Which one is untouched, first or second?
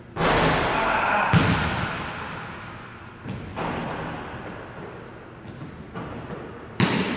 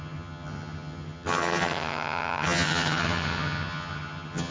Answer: first